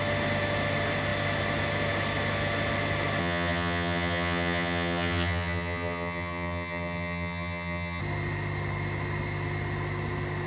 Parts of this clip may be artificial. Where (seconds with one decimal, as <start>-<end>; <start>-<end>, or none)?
3.2-8.0